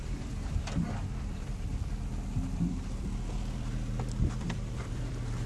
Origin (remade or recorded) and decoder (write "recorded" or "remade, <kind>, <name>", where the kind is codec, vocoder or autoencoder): remade, vocoder, BigVGAN v2